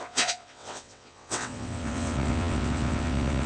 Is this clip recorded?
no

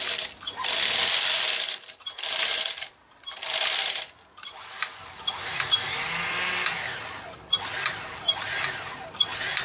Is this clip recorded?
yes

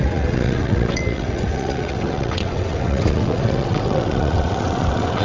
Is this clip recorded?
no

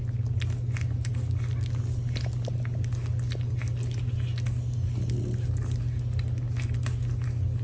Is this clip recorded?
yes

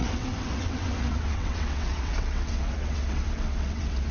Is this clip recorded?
no